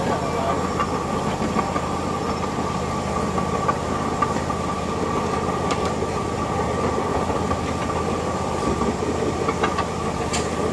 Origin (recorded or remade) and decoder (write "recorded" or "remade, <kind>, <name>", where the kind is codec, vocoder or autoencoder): recorded